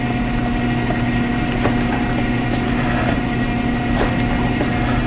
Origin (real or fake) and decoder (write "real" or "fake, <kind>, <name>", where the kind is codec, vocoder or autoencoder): real